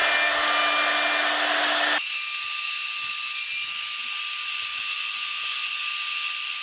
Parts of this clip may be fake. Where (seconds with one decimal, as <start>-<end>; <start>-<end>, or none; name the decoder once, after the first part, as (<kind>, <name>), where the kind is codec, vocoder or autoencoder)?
4.7-5.8 (vocoder, Vocos)